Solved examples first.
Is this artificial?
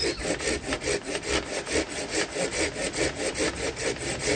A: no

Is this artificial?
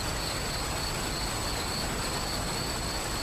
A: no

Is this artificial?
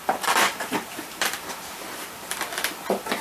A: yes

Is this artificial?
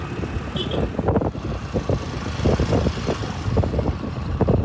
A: no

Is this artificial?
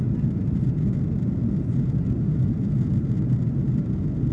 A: no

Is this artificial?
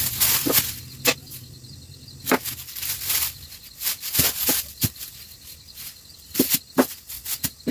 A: no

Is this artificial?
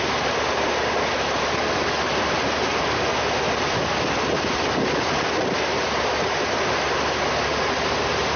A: no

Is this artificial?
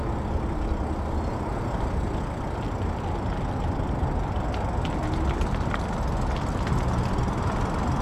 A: no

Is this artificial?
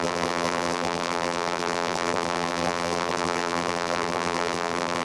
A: yes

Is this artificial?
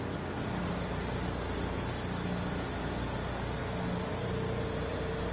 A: no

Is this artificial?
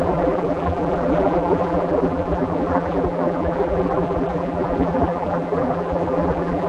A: yes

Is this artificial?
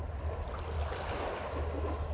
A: no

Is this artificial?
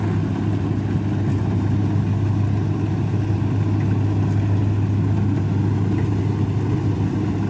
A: no